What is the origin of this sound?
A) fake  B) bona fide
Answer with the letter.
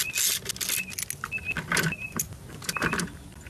B